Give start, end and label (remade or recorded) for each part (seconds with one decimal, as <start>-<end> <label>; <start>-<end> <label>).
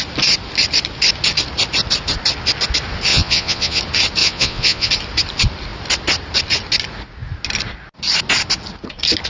0.0-3.1 recorded; 3.1-3.8 remade; 3.8-4.2 recorded; 4.2-4.9 remade; 4.9-9.3 recorded